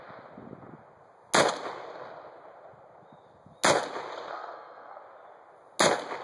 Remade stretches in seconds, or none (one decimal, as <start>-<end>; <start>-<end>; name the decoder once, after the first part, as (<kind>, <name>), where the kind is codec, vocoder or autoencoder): 4.3-5.0 (codec, SNAC)